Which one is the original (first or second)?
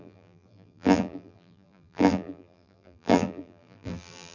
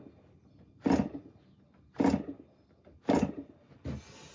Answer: second